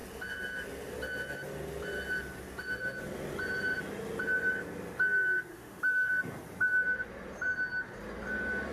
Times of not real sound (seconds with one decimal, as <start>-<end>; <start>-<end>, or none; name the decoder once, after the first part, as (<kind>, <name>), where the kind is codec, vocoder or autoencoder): 5.5-6.1 (autoencoder, DAC-VAE)

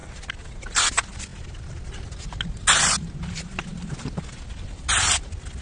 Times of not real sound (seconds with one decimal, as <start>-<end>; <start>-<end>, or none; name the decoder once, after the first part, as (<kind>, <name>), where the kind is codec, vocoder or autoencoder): none

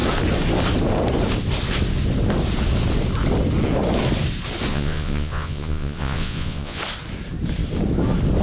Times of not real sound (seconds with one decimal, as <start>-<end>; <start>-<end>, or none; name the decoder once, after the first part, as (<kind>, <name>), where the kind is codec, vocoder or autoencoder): 4.7-6.8 (vocoder, Vocos)

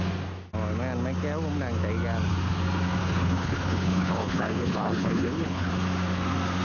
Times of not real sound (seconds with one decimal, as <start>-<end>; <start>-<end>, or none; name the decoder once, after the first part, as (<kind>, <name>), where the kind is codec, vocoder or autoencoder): 3.0-5.7 (codec, HILCodec)

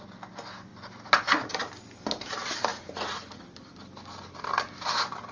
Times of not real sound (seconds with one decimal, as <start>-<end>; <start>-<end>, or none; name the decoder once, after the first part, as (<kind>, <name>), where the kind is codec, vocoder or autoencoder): 2.7-3.4 (vocoder, Vocos)